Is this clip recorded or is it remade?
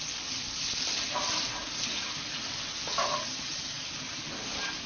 recorded